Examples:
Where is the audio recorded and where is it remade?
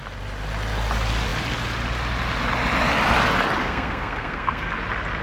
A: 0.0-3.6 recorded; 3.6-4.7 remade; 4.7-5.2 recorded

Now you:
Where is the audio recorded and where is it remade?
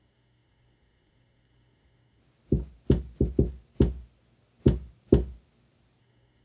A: 0.0-2.2 remade; 2.2-6.0 recorded; 6.0-6.4 remade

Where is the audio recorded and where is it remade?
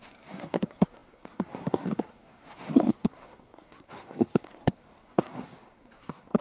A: 0.0-6.4 remade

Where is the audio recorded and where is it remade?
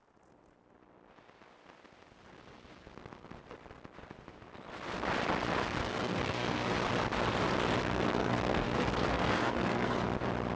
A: 0.0-5.8 recorded; 5.8-6.7 remade; 6.7-7.8 recorded; 7.8-10.0 remade; 10.0-10.6 recorded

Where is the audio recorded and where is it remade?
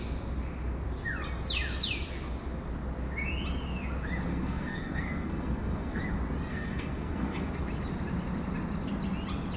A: 0.0-4.3 recorded; 4.3-6.0 remade; 6.0-6.5 recorded; 6.5-7.5 remade; 7.5-9.6 recorded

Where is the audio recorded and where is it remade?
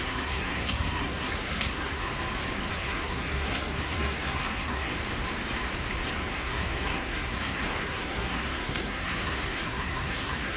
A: 0.0-2.1 remade; 2.1-2.7 recorded; 2.7-4.9 remade; 4.9-6.3 recorded; 6.3-10.6 remade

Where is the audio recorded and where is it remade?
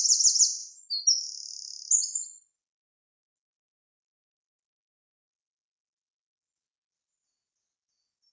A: 0.0-8.3 recorded